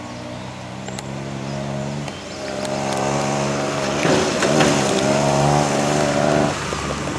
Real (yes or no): yes